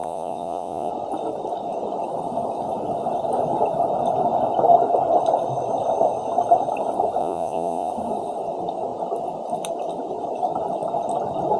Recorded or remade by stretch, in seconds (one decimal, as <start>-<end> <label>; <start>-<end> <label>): 0.0-0.9 remade; 0.9-7.2 recorded; 7.2-7.9 remade; 7.9-11.6 recorded